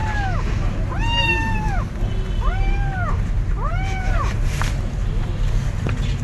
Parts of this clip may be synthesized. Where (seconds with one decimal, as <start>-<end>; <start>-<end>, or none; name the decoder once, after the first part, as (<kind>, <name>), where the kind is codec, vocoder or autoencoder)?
3.1-5.0 (vocoder, BigVGAN v2)